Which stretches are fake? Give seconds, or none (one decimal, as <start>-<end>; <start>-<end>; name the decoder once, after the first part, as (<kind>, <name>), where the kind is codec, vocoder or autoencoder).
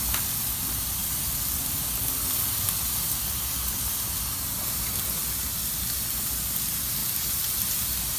none